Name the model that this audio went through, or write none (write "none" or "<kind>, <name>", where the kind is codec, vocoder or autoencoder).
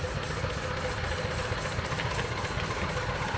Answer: none